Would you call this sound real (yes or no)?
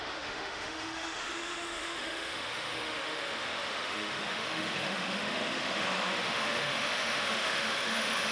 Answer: no